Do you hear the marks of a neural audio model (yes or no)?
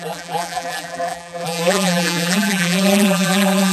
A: yes